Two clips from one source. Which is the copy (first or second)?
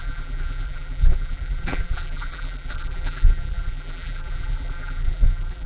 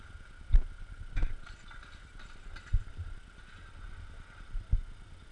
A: first